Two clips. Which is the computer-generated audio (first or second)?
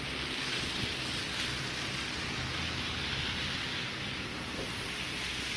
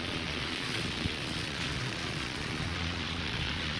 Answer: second